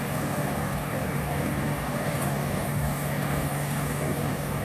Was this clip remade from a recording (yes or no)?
yes